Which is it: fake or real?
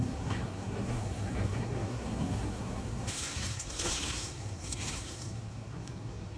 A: fake